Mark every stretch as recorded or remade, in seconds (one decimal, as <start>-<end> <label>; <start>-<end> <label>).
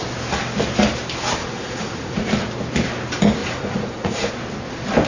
0.0-1.4 recorded; 1.4-2.3 remade; 2.3-3.4 recorded; 3.4-4.3 remade; 4.3-5.1 recorded